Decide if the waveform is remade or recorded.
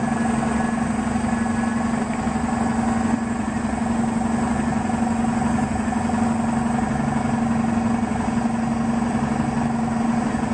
recorded